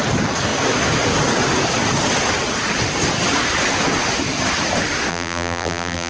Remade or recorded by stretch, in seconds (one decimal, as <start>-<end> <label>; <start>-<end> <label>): 0.0-5.1 recorded; 5.1-6.1 remade